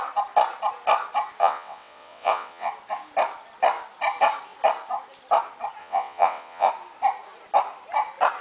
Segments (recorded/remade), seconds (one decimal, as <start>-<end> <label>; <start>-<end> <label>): 0.0-1.4 recorded; 1.4-2.7 remade; 2.7-5.8 recorded; 5.8-6.7 remade; 6.7-8.4 recorded